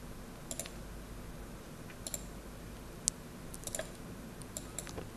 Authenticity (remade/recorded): recorded